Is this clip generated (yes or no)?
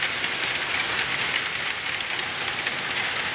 no